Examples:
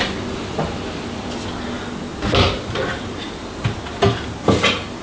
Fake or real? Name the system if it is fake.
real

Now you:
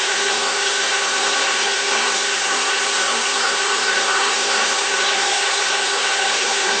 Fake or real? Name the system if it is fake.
fake, codec, SNAC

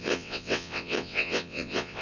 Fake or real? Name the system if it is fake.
fake, vocoder, WaveNeXt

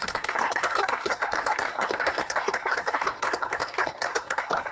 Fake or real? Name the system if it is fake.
fake, codec, SNAC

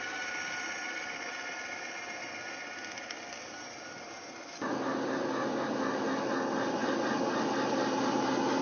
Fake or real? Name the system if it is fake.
real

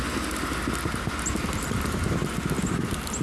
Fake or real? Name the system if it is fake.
real